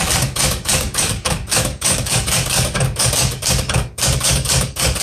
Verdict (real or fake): fake